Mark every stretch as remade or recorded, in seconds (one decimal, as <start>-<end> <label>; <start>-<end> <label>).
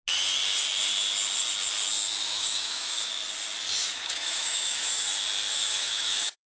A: 0.0-2.2 recorded; 2.2-3.1 remade; 3.1-3.8 recorded; 3.8-5.1 remade; 5.1-5.5 recorded; 5.5-6.5 remade